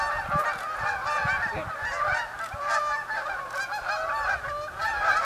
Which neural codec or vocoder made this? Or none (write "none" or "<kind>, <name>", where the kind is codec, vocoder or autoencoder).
none